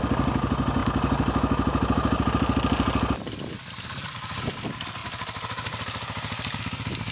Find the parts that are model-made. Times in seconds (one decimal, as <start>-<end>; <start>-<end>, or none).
none